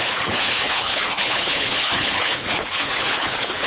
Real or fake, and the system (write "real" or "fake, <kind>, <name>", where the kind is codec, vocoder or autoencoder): fake, codec, HILCodec